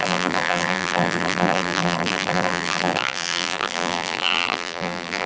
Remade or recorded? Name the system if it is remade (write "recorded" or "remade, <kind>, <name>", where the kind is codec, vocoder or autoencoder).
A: remade, vocoder, BigVGAN v2